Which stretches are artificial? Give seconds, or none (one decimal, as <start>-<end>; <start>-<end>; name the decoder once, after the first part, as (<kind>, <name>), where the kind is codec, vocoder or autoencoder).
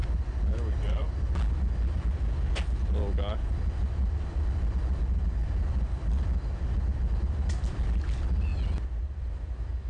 none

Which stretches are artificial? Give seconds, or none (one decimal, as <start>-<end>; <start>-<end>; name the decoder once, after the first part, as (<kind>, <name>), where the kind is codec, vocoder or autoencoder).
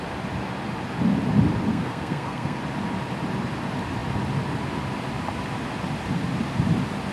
1.7-2.6 (codec, SNAC)